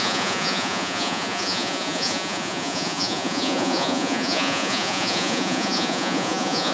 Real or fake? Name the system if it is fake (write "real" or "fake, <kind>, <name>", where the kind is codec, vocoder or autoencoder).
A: fake, vocoder, Vocos